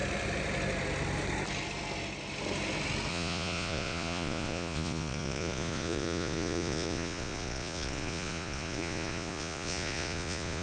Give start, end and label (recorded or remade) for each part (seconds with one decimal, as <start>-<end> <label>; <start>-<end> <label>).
0.0-3.1 recorded; 3.1-10.6 remade